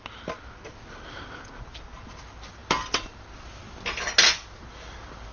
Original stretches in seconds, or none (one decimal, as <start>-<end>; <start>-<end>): 0.0-5.3